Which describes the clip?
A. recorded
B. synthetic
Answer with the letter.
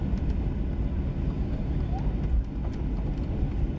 A